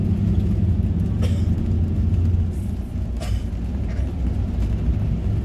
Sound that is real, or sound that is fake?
real